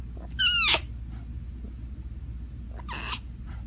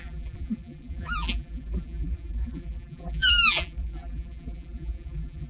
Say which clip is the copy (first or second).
second